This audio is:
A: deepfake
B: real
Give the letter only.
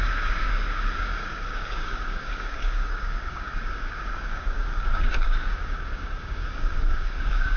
A